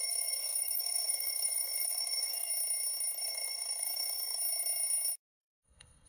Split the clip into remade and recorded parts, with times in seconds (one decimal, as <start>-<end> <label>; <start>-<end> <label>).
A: 0.0-2.5 remade; 2.5-3.2 recorded; 3.2-4.4 remade; 4.4-5.4 recorded; 5.4-6.1 remade